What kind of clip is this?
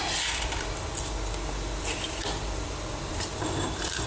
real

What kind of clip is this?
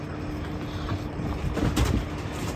real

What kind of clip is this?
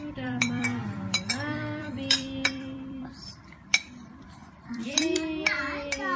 fake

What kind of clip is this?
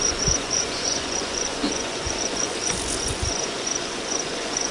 fake